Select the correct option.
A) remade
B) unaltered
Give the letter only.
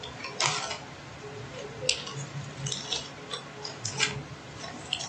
B